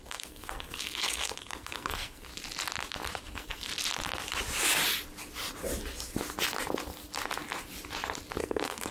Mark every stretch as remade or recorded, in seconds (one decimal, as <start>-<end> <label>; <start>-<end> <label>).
0.0-2.3 remade; 2.3-3.2 recorded; 3.2-3.7 remade; 3.7-8.4 recorded; 8.4-8.9 remade